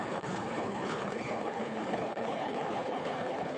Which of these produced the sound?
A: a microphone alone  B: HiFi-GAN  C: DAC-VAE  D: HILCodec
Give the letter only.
D